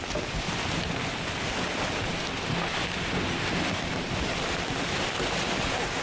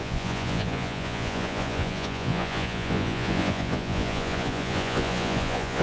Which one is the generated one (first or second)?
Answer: second